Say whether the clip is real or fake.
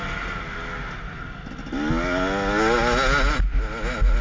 real